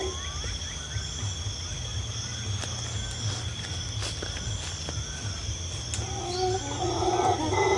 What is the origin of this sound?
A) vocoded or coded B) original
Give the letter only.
B